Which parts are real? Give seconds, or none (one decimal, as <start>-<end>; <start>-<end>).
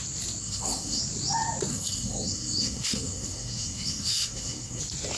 0.0-0.4; 1.0-1.7; 4.8-5.2